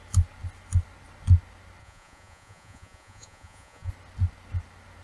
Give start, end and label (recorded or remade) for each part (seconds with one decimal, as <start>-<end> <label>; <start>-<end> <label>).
0.0-1.8 recorded; 1.8-3.9 remade; 3.9-5.0 recorded

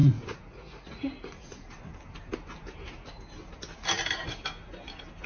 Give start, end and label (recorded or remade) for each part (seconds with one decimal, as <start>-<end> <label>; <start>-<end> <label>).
0.0-1.8 remade; 1.8-5.3 recorded

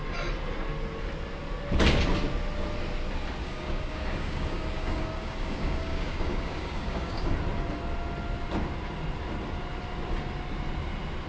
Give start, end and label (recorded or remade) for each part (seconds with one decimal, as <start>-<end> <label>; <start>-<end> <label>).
0.0-3.4 recorded; 3.4-7.3 remade; 7.3-11.3 recorded

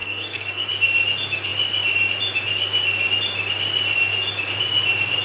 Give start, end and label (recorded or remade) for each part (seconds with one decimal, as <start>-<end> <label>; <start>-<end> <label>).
0.0-0.7 remade; 0.7-5.2 recorded

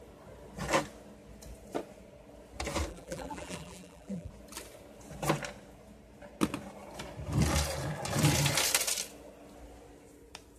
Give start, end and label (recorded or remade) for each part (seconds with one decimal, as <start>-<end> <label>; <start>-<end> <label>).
0.0-2.9 recorded; 2.9-4.3 remade; 4.3-10.6 recorded

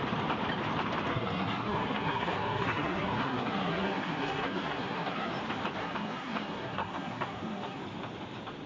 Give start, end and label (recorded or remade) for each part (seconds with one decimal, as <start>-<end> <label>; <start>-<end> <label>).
0.0-1.1 recorded; 1.1-5.3 remade; 5.3-5.8 recorded; 5.8-7.8 remade; 7.8-8.7 recorded

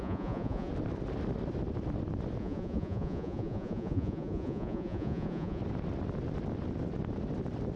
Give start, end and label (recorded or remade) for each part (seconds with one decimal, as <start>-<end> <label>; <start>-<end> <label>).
0.0-0.7 remade; 0.7-2.4 recorded; 2.4-5.6 remade; 5.6-7.8 recorded